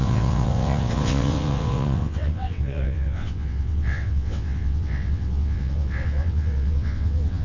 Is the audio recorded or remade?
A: remade